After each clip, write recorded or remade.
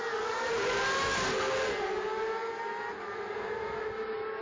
recorded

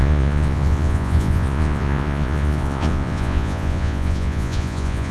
remade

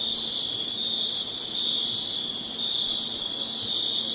recorded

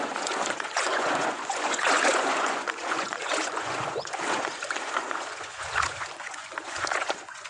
remade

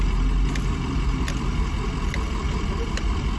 recorded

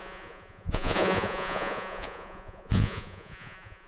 remade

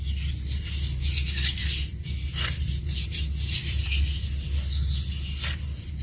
recorded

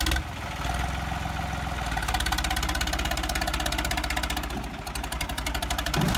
recorded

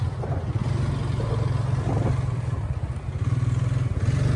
recorded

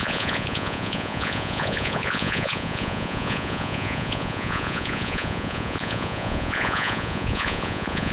remade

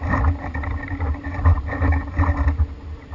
recorded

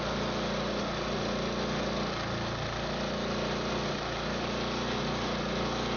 recorded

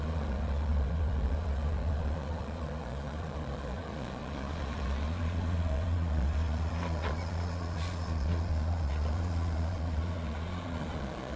remade